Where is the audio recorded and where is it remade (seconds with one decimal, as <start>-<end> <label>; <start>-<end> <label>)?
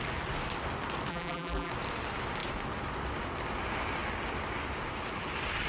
0.0-1.1 recorded; 1.1-1.7 remade; 1.7-5.7 recorded